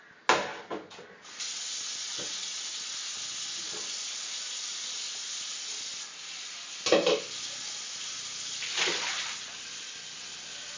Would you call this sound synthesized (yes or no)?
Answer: no